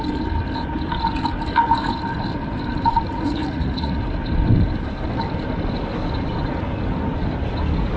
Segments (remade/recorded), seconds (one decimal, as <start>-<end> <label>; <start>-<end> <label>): 0.0-2.9 recorded; 2.9-4.0 remade; 4.0-8.0 recorded